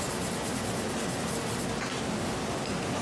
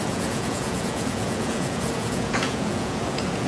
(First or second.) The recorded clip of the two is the first